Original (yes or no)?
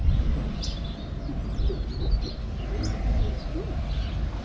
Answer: yes